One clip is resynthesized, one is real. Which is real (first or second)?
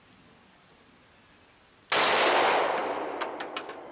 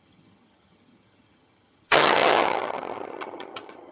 first